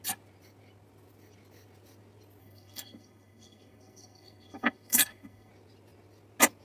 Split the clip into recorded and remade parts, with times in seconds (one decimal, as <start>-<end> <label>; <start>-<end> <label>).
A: 0.0-2.4 recorded; 2.4-5.5 remade; 5.5-6.6 recorded